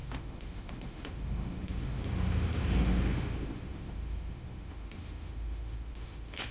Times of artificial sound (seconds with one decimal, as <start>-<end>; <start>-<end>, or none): 0.0-6.5